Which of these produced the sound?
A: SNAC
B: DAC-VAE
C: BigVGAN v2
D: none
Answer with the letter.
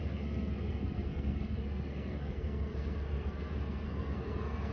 A